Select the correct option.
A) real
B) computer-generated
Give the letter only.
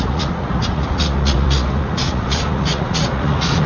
B